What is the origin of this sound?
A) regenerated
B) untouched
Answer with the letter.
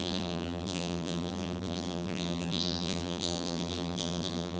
A